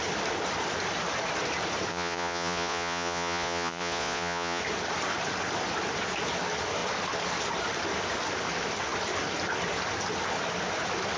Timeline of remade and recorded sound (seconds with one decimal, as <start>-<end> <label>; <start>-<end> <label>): 0.0-1.9 recorded; 1.9-4.6 remade; 4.6-11.2 recorded